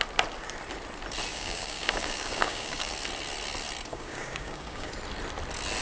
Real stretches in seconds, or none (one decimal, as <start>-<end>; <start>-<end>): 0.0-1.3; 2.9-3.9; 4.9-5.8

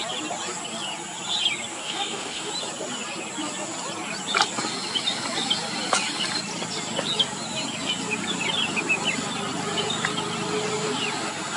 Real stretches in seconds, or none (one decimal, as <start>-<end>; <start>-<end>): 0.0-1.7; 2.5-11.6

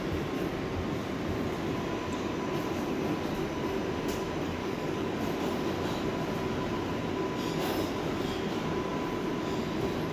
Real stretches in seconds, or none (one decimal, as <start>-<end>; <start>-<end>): 0.0-4.6; 5.2-10.1

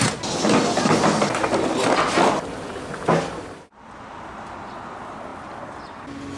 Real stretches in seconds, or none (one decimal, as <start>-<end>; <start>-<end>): 0.0-6.4

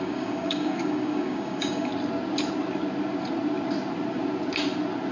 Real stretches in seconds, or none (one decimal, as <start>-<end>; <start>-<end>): 1.9-5.1

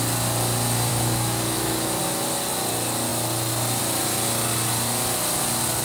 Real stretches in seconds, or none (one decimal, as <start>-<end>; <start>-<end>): 0.0-0.9; 2.0-5.8

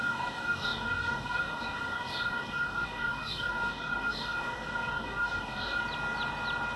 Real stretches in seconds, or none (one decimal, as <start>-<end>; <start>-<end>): 5.8-6.8